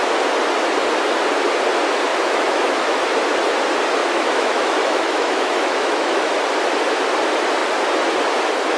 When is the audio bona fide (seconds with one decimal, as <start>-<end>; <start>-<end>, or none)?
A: 0.0-2.1; 3.0-4.0; 6.4-8.8